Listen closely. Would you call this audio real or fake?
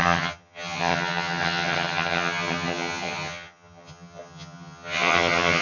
fake